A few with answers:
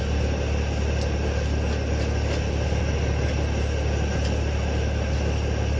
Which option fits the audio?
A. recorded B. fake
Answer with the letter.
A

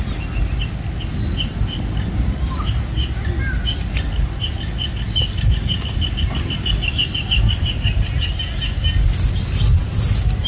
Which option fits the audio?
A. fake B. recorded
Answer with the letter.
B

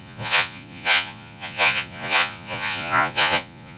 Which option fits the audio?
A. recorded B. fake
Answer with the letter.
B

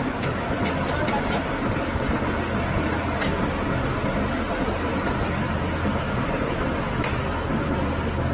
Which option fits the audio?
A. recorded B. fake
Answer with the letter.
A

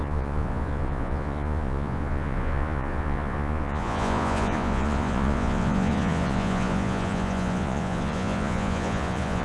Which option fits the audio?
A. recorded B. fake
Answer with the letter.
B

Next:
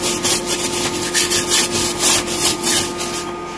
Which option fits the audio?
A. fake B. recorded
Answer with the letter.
B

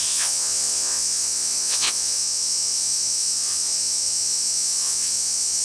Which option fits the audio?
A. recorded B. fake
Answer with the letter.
B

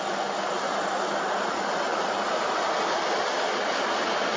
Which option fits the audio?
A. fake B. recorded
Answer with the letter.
B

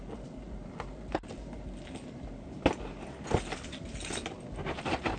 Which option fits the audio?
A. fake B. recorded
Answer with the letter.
B